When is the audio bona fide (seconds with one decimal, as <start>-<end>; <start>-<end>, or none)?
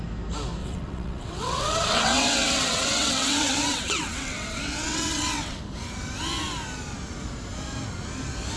0.0-0.6; 5.6-8.6